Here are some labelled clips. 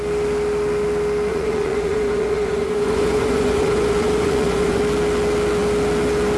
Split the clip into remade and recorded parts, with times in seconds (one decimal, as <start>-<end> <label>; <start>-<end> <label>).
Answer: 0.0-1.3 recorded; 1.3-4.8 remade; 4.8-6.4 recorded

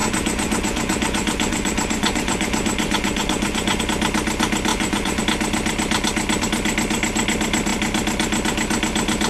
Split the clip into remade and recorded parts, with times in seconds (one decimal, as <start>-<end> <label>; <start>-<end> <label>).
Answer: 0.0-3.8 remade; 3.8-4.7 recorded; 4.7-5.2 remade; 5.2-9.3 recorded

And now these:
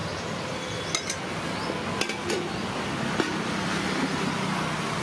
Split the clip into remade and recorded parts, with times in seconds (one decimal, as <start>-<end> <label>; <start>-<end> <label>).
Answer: 0.0-5.0 recorded